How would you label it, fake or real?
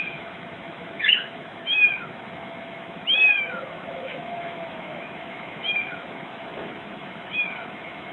fake